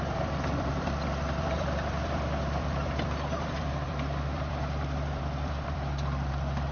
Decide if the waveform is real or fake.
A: fake